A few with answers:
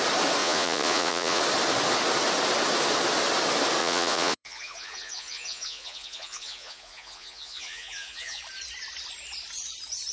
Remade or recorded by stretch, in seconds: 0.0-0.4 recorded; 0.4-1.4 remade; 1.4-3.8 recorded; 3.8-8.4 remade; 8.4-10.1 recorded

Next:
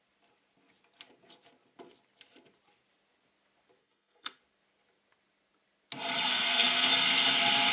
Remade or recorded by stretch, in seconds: 0.0-3.8 recorded; 3.8-4.4 remade; 4.4-6.3 recorded; 6.3-6.9 remade; 6.9-7.7 recorded

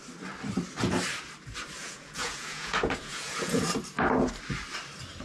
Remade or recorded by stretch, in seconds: 0.0-1.8 recorded; 1.8-3.7 remade; 3.7-5.2 recorded

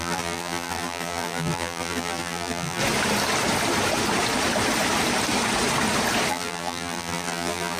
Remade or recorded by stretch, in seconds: 0.0-2.8 remade; 2.8-6.3 recorded; 6.3-7.8 remade

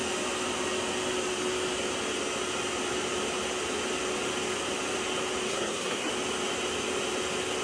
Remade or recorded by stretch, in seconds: 0.0-5.5 recorded; 5.5-6.1 remade; 6.1-7.6 recorded

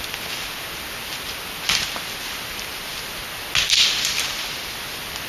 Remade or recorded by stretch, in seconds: 0.0-5.3 recorded